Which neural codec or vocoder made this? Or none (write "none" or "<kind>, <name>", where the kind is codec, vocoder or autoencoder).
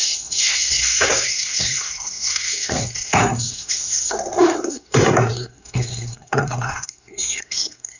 codec, SNAC